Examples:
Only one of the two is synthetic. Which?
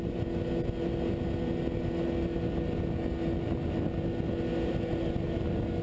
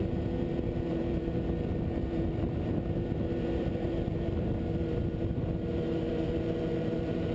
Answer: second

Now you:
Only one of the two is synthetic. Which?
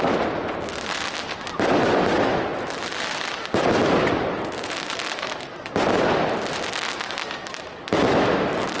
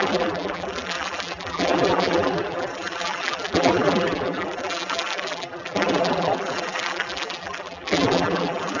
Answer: second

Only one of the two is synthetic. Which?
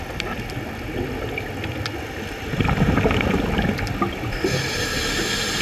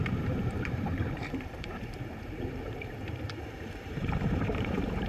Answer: second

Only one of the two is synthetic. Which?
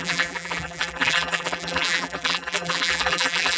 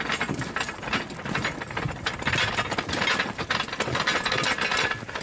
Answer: first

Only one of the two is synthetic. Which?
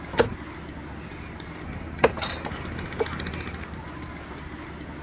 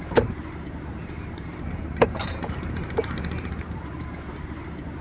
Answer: second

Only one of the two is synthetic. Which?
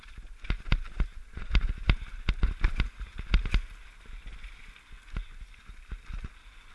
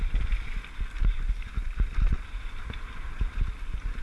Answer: second